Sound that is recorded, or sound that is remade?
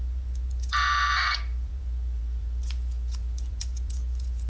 remade